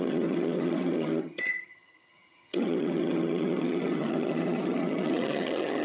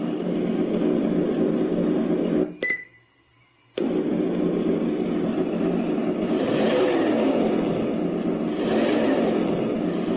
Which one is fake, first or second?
first